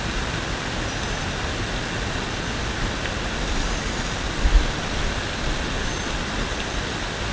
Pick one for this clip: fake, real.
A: real